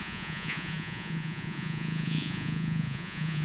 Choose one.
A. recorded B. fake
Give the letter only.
B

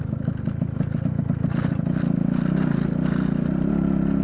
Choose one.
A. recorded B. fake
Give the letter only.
A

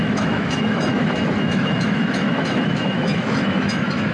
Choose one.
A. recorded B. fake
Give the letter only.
B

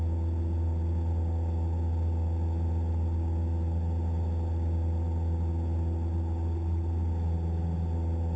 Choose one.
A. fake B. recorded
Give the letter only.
B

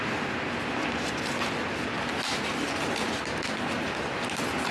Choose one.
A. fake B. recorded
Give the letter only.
B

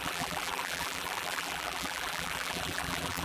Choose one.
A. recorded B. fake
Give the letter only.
B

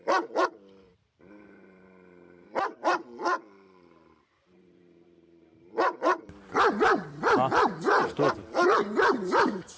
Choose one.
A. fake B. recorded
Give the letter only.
A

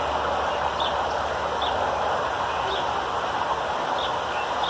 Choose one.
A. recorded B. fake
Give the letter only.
A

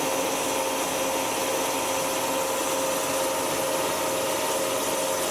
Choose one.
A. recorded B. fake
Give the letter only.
A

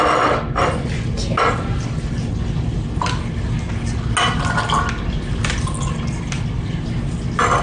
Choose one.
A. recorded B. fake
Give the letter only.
A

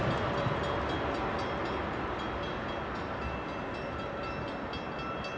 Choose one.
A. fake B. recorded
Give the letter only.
B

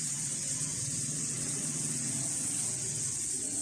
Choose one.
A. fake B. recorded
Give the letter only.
A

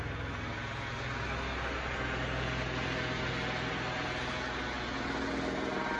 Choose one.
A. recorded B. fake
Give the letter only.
A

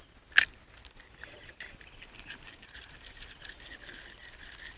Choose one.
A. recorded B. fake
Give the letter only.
A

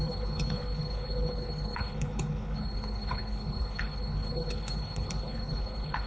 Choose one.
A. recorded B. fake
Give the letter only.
B